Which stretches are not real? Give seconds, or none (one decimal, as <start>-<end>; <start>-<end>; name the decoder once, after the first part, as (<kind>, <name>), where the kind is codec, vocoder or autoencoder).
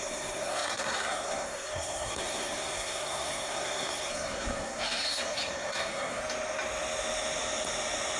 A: 0.0-6.2 (codec, SNAC)